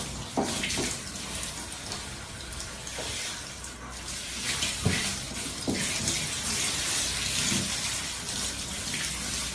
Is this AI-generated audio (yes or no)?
no